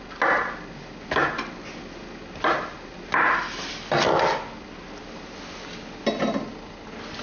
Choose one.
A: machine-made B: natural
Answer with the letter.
B